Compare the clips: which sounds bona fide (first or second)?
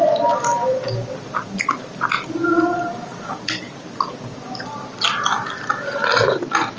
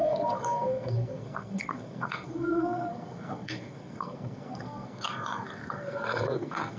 first